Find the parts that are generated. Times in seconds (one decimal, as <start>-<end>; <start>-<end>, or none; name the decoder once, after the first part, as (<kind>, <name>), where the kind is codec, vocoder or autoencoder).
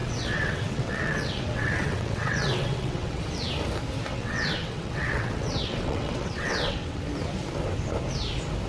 0.0-3.2 (vocoder, WaveNeXt); 4.1-7.0